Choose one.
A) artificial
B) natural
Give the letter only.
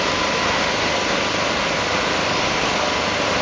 B